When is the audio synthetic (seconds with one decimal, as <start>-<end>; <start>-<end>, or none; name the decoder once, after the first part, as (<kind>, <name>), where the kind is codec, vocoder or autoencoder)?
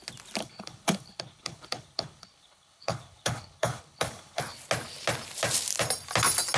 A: 0.4-4.4 (codec, HILCodec)